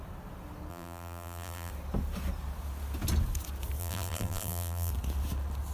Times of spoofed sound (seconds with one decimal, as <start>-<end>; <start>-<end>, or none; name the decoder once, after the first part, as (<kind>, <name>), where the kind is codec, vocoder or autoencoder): 0.7-1.7 (vocoder, BigVGAN v2); 3.8-4.9